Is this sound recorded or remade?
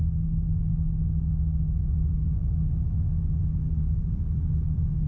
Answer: recorded